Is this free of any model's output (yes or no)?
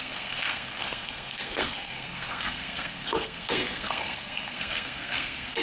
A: no